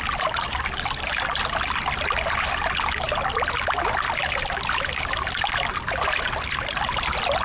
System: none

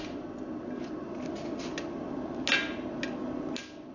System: none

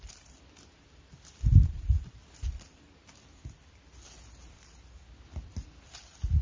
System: none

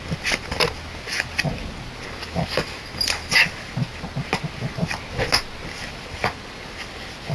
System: none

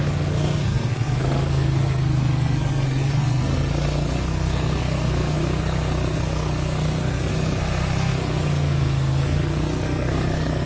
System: codec, SNAC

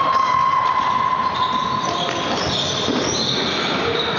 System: none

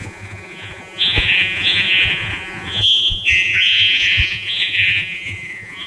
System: vocoder, Vocos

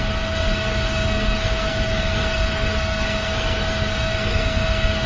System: codec, SNAC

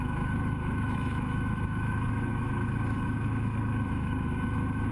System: autoencoder, DAC-VAE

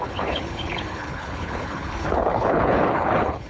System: codec, HILCodec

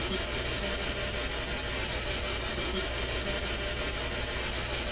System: none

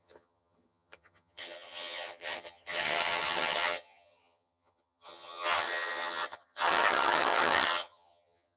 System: vocoder, HiFi-GAN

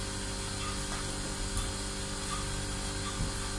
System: none